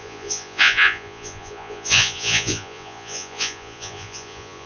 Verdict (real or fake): fake